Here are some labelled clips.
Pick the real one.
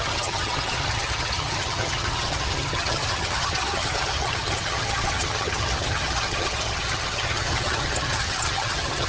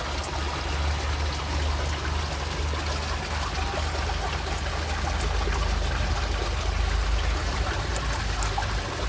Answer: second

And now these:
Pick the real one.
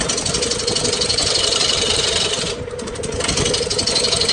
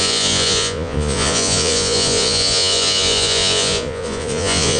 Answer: first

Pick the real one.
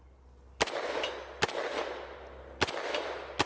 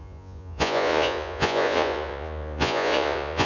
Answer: first